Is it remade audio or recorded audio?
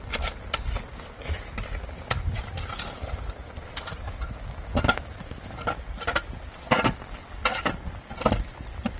recorded